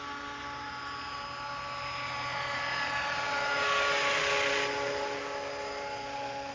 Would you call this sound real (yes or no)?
yes